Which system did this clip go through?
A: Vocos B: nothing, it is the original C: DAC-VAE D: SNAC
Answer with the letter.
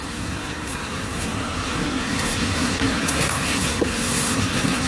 D